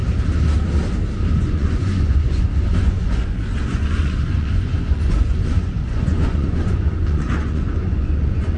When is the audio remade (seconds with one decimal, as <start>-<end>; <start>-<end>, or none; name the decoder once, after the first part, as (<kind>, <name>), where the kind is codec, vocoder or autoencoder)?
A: 1.4-8.6 (vocoder, Vocos)